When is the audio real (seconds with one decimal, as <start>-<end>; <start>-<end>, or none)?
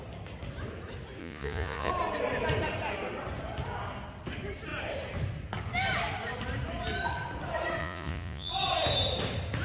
0.0-1.2; 1.9-7.8; 8.5-9.6